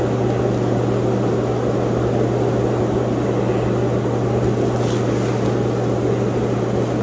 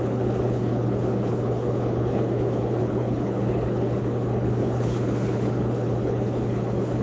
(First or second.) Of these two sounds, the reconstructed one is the second